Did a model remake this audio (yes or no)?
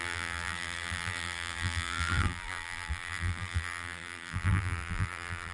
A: yes